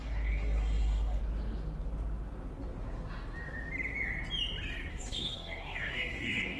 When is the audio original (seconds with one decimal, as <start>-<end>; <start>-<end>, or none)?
1.2-4.9